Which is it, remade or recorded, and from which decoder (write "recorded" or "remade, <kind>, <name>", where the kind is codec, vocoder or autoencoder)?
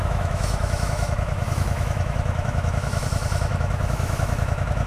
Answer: remade, autoencoder, DAC-VAE